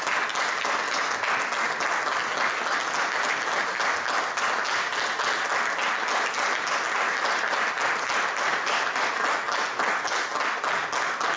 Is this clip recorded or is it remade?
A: recorded